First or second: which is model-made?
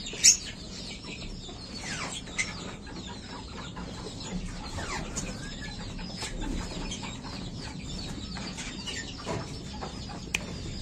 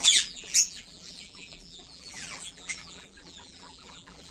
second